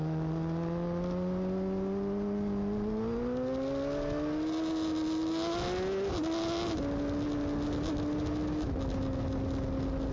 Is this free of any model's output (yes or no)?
yes